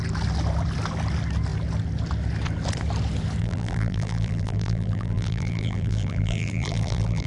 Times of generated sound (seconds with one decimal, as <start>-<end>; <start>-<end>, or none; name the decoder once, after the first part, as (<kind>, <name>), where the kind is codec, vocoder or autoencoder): 3.4-7.3 (vocoder, BigVGAN v2)